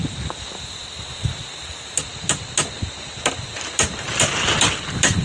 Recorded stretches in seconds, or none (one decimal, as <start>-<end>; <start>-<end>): 0.0-5.2